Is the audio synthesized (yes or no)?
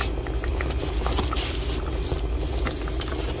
no